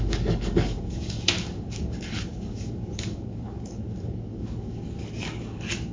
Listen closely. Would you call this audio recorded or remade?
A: remade